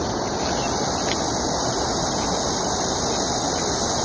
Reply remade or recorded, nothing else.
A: recorded